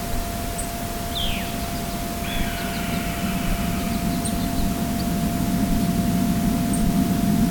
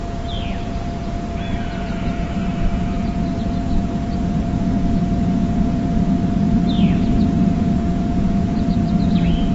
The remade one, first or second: second